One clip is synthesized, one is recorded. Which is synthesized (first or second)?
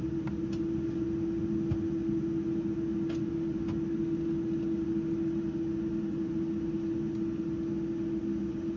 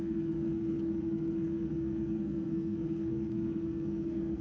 second